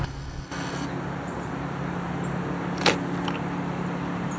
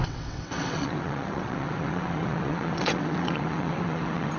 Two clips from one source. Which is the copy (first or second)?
second